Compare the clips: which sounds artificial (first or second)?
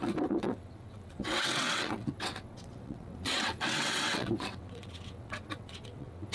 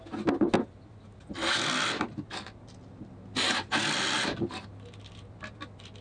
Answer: first